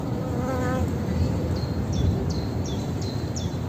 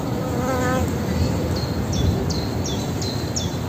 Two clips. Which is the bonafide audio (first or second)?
second